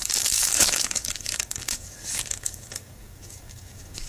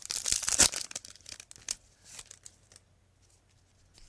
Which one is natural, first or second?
second